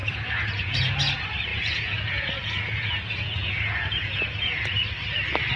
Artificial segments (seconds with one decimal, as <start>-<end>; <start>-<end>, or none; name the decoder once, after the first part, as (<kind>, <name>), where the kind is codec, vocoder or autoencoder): 0.0-1.1 (vocoder, Vocos); 1.5-4.9